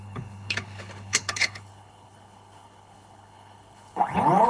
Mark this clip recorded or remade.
remade